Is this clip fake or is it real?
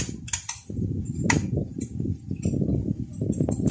real